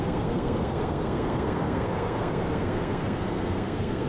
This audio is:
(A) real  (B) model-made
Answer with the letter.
B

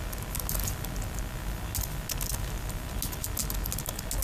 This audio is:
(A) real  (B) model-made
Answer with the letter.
A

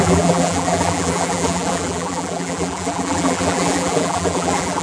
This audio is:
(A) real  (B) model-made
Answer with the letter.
B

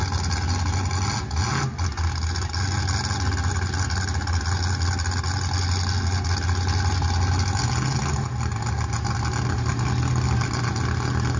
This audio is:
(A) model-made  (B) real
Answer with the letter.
B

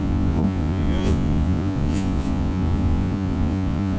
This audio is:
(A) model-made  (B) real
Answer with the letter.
A